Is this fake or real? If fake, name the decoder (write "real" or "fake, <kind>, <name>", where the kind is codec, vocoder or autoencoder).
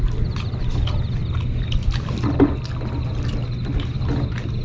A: real